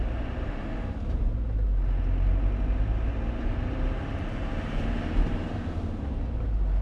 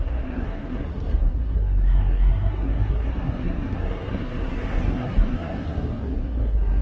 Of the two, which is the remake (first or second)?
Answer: second